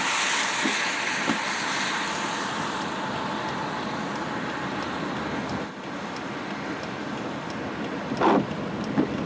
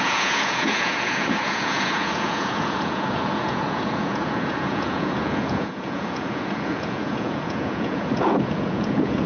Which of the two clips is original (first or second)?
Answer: first